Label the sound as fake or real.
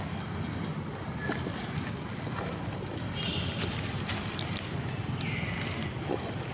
real